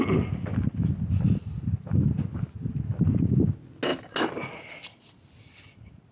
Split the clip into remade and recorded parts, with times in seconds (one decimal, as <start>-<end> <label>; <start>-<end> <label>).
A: 0.0-6.1 recorded